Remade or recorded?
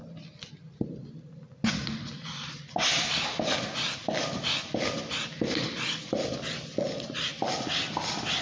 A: recorded